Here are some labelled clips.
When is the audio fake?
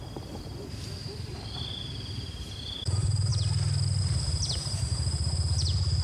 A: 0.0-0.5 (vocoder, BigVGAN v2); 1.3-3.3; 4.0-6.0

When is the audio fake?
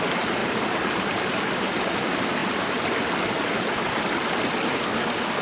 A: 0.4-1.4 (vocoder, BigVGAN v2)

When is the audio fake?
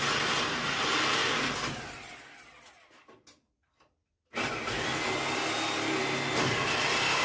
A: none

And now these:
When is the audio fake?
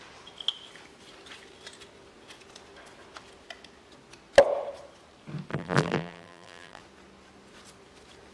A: 5.5-6.8 (vocoder, BigVGAN v2)